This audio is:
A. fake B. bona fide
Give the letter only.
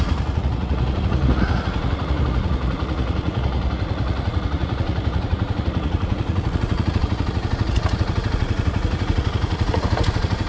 A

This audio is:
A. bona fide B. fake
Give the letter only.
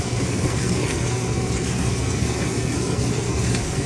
B